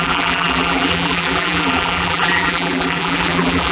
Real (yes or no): no